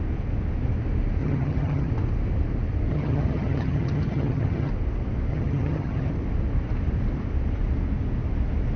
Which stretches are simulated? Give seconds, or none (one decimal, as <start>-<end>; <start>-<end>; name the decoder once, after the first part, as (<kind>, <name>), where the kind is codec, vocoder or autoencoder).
1.2-1.9 (vocoder, HiFi-GAN); 2.9-4.7; 5.3-6.1